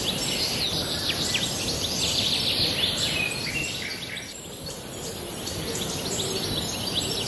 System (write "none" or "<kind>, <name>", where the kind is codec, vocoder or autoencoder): none